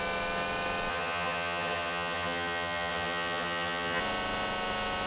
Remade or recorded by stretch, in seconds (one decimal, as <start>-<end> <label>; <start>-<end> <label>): 0.0-0.9 recorded; 0.9-4.0 remade; 4.0-5.1 recorded